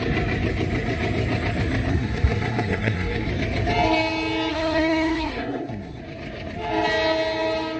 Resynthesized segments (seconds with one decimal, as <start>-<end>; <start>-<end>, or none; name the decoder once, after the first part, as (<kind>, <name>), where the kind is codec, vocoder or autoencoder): 1.9-3.3 (codec, SNAC); 4.5-6.0